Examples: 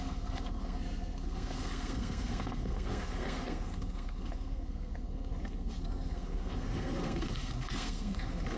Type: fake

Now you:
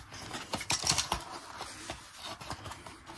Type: real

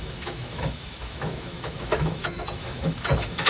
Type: fake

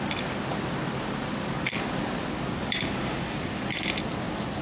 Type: real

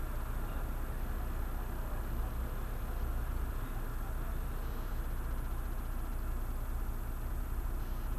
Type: real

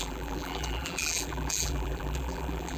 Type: fake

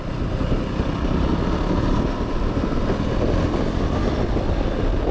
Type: real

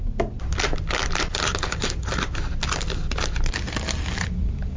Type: real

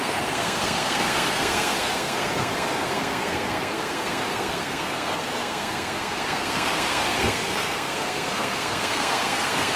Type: fake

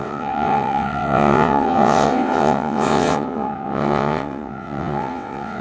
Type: fake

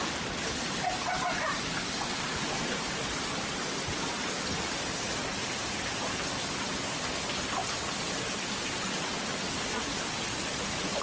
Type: real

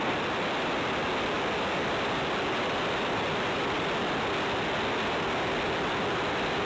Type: real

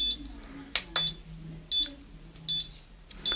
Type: real